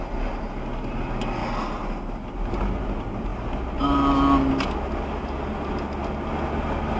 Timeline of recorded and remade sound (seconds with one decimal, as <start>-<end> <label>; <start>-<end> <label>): 0.0-7.0 recorded